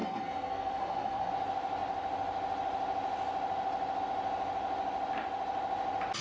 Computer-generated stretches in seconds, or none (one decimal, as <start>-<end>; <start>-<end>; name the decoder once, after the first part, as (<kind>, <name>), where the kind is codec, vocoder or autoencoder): 0.0-1.3 (codec, SNAC)